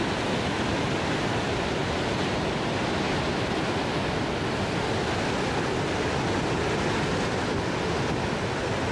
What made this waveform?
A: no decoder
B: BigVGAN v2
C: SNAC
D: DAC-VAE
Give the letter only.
A